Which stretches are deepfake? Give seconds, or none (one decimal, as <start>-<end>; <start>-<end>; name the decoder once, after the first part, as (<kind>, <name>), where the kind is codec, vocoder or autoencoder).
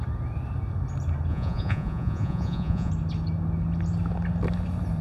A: 1.3-2.9 (vocoder, Vocos)